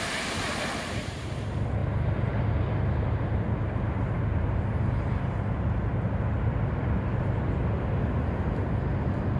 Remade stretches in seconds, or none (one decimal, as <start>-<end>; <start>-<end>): none